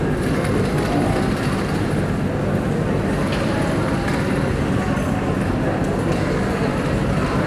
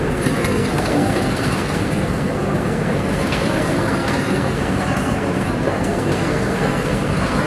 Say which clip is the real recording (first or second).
first